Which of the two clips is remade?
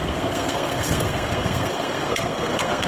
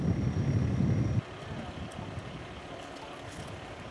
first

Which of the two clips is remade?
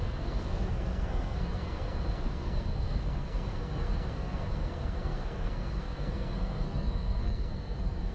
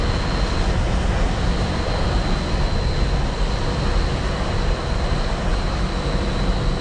first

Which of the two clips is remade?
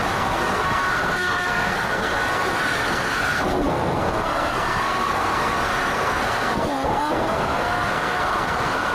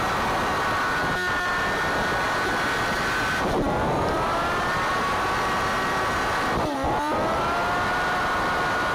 first